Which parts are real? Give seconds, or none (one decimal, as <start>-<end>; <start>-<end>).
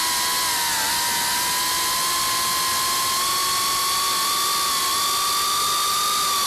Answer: 0.0-6.5